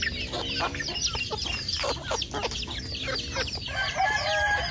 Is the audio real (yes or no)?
yes